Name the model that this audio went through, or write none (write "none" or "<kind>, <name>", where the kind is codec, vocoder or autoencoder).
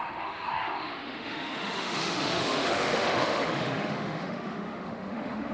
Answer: autoencoder, DAC-VAE